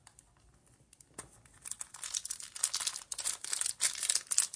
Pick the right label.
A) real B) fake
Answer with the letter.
B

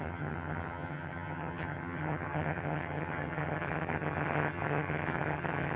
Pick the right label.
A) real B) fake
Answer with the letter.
B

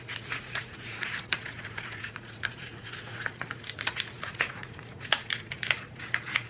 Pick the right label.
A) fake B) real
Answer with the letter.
A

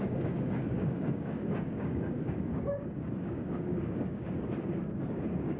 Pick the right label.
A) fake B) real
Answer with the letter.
A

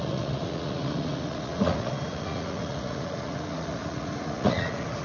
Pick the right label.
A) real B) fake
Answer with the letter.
B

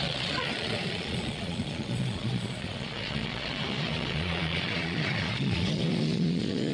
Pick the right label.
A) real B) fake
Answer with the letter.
B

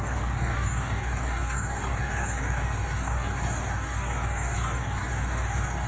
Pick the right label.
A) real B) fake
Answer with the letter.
B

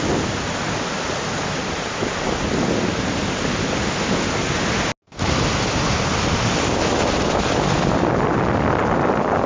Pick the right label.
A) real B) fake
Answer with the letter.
A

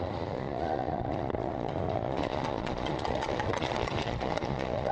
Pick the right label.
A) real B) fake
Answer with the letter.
B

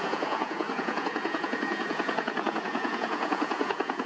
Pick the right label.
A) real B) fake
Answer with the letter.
B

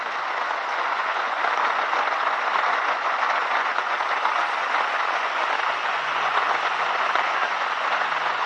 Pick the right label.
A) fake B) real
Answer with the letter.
A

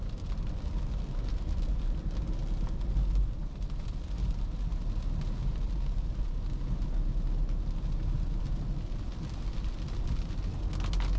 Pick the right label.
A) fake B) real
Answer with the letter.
B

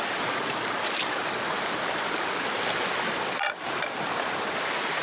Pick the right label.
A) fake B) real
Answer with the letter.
B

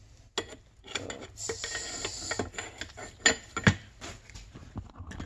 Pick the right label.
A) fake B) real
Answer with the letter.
B